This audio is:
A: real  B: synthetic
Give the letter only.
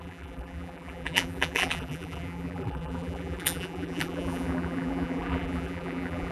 B